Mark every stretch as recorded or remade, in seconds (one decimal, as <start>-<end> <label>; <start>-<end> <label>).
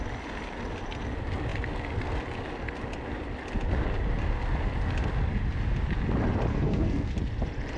0.0-6.5 recorded; 6.5-7.1 remade; 7.1-7.8 recorded